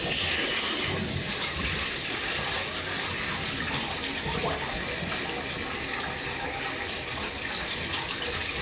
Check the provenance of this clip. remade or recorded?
recorded